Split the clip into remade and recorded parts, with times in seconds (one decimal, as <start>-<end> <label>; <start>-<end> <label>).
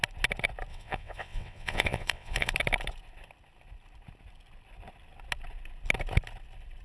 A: 0.0-0.7 recorded; 0.7-2.5 remade; 2.5-6.8 recorded